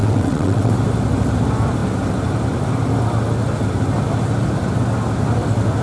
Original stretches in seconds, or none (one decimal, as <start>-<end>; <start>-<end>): 0.7-5.8